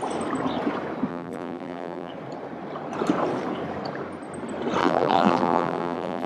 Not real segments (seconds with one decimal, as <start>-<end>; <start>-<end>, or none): 1.1-2.1; 4.8-6.3